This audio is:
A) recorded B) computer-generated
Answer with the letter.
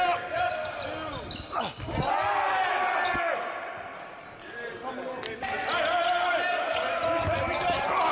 A